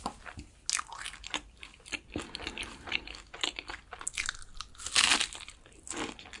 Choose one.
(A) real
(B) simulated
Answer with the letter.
A